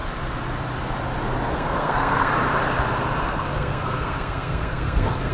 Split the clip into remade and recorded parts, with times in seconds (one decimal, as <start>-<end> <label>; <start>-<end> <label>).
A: 0.0-1.5 recorded; 1.5-2.3 remade; 2.3-3.2 recorded; 3.2-5.3 remade